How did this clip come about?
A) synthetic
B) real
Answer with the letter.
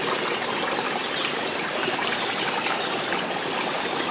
B